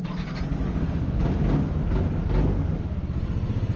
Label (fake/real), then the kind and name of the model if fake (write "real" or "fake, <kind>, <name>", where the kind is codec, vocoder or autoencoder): real